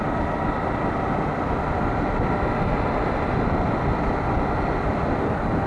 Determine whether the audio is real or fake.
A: real